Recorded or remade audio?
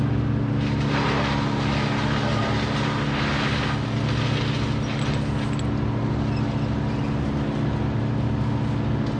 recorded